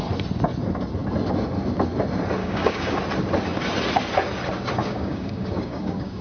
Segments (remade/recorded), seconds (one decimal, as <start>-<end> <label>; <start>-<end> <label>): 0.0-2.4 recorded; 2.4-3.0 remade; 3.0-4.8 recorded; 4.8-6.2 remade